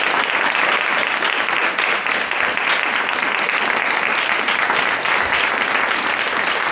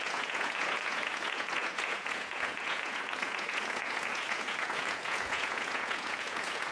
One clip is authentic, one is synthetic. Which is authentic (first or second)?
first